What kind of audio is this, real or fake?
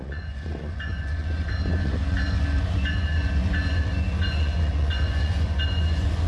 fake